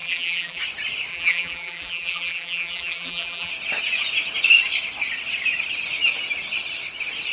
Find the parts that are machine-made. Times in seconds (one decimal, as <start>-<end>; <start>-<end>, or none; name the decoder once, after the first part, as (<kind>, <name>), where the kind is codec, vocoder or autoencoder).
0.0-0.6 (vocoder, BigVGAN v2); 1.1-3.5

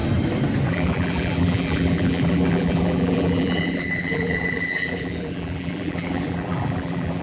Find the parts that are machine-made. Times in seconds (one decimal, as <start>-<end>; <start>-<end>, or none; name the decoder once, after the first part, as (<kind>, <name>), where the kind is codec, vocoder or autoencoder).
0.7-7.2 (vocoder, BigVGAN v2)

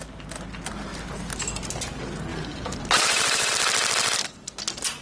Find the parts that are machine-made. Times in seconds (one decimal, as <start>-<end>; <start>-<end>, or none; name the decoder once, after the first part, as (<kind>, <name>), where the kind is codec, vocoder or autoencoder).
2.3-3.5 (vocoder, BigVGAN v2)